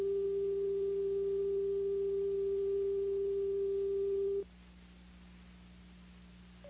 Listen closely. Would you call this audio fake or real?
real